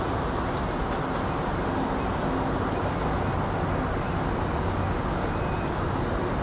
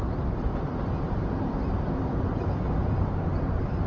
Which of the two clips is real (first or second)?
first